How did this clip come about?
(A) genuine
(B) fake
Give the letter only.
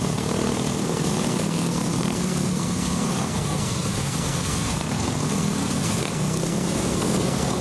B